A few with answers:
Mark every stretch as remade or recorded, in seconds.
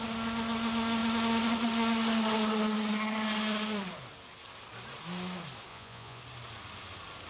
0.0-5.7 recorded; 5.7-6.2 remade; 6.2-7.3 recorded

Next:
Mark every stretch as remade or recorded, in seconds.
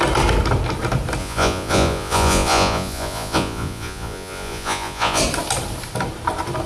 0.0-1.2 recorded; 1.2-5.2 remade; 5.2-6.7 recorded